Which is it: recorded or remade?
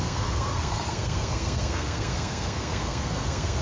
remade